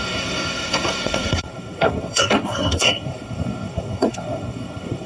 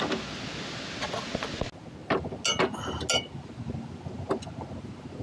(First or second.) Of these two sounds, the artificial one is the first